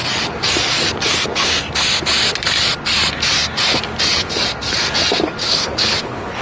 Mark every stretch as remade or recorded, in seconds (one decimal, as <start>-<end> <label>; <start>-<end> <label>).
0.0-5.4 recorded; 5.4-6.4 remade